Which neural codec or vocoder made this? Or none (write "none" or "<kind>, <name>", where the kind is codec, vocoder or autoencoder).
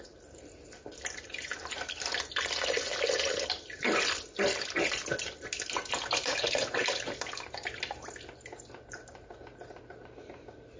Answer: none